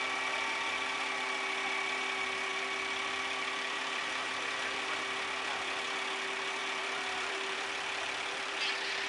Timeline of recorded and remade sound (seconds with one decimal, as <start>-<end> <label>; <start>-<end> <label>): 0.0-2.5 recorded; 2.5-4.2 remade; 4.2-6.6 recorded; 6.6-8.6 remade; 8.6-9.1 recorded